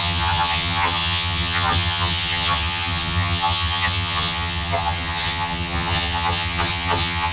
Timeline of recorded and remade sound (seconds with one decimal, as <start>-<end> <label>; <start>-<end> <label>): 0.0-7.3 remade